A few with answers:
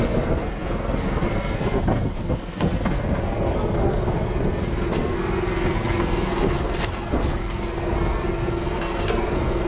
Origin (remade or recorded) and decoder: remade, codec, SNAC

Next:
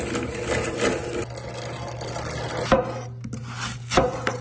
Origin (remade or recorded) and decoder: recorded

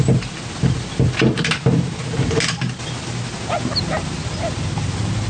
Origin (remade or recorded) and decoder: recorded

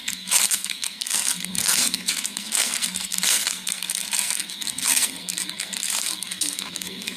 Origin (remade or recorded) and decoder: remade, codec, SNAC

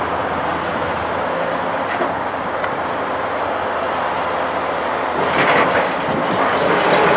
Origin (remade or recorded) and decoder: recorded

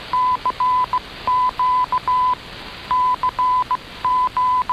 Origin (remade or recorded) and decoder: recorded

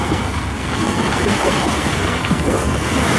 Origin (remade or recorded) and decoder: remade, codec, SNAC